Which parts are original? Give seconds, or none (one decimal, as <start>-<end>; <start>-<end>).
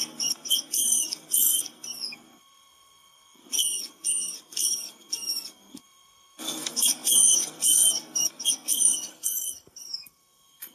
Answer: none